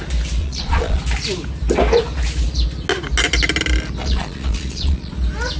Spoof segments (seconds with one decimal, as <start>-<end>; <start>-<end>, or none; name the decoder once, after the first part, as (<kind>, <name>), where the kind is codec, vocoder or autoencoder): 0.4-1.0 (vocoder, Vocos); 4.0-5.1